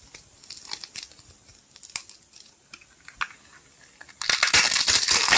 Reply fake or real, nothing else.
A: real